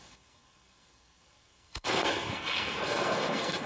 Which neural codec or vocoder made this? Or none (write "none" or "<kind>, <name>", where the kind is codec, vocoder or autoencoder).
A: codec, SNAC